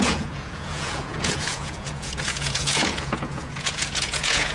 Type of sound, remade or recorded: remade